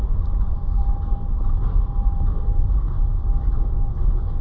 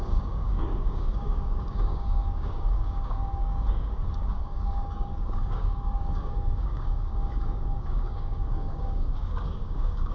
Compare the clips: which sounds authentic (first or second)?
first